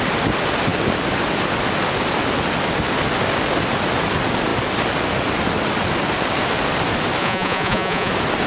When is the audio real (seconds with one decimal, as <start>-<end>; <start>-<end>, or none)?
0.0-7.2; 8.1-8.5